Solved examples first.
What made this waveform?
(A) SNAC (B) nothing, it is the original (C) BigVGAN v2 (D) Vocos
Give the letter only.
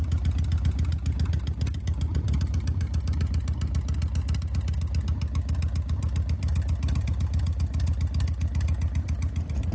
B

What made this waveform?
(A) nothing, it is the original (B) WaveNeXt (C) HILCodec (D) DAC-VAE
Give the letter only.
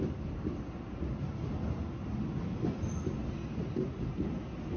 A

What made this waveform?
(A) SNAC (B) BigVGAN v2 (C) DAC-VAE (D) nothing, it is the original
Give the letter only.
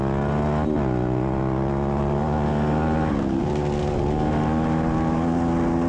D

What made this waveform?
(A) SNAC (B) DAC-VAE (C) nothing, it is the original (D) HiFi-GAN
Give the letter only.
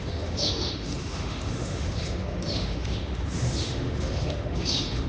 B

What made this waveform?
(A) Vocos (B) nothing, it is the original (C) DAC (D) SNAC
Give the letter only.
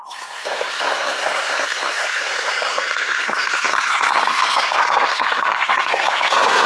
D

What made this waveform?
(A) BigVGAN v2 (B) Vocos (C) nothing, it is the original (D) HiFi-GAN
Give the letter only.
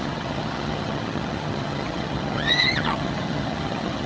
D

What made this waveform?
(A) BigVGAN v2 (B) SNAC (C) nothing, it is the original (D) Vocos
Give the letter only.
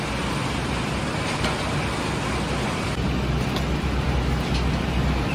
C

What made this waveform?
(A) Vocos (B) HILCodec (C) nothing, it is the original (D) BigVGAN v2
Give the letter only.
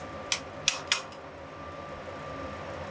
C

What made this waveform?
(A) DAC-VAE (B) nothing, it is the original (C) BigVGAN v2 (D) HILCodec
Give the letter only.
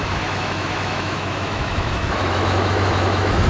A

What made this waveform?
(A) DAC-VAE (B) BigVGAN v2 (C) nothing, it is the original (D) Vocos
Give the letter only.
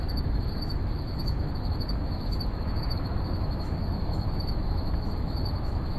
A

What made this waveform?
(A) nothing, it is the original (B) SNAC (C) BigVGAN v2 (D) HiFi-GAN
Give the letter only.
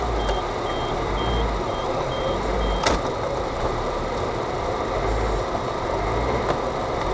A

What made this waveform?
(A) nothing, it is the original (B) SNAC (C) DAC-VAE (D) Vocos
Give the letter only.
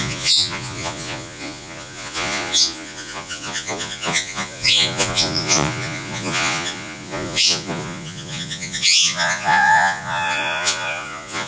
D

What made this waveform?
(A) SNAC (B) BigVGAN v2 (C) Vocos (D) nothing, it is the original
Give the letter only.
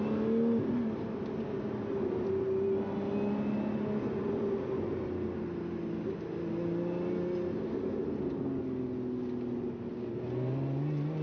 D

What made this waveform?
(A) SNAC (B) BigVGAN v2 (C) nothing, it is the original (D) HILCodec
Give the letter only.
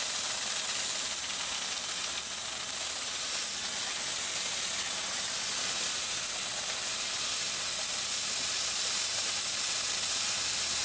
C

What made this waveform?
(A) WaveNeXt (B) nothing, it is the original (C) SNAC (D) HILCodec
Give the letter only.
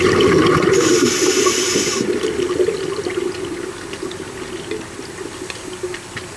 B